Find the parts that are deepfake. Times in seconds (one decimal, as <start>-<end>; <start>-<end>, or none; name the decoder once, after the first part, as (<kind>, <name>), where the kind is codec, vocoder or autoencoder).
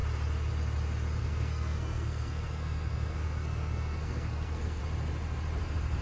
1.2-4.8 (codec, SNAC)